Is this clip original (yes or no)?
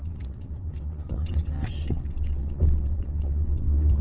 no